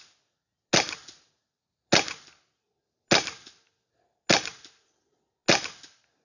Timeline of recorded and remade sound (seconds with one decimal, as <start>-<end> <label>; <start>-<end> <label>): 0.0-6.2 recorded